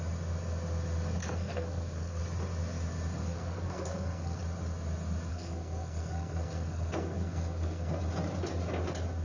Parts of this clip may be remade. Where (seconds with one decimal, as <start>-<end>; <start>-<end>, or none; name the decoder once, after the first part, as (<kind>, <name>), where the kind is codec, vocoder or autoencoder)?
1.2-2.2 (codec, SNAC); 3.2-4.4; 5.3-8.0